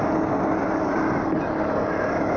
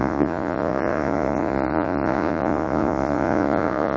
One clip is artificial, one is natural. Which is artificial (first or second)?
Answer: second